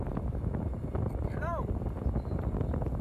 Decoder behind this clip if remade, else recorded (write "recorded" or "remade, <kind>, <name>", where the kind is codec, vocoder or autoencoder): recorded